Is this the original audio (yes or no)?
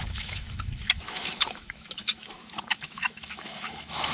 no